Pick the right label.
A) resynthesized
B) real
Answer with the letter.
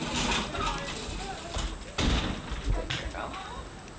B